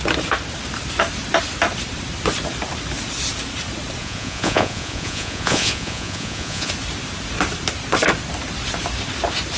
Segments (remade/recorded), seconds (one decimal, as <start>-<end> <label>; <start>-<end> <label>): 0.0-4.0 recorded; 4.0-6.7 remade; 6.7-9.6 recorded